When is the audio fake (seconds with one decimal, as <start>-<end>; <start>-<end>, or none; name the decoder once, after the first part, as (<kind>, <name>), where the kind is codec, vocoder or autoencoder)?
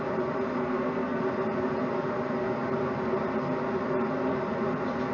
0.6-1.2 (codec, SNAC)